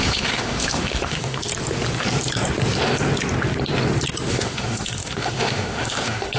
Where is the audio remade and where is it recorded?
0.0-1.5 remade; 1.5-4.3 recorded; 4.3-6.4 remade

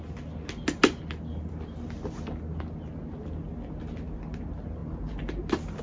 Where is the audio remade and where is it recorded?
0.0-5.8 recorded

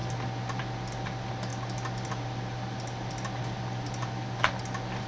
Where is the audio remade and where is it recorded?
0.0-5.1 recorded